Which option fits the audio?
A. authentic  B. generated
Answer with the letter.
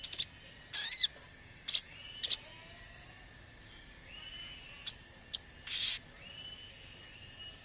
A